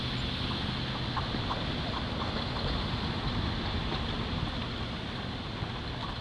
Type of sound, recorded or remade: recorded